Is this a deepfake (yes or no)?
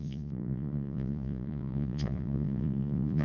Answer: yes